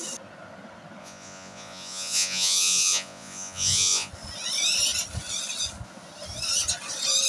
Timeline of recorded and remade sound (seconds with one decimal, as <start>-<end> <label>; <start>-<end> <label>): 0.0-1.0 recorded; 1.0-4.1 remade; 4.1-7.3 recorded